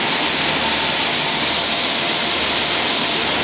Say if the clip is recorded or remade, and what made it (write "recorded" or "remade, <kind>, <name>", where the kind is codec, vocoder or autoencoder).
recorded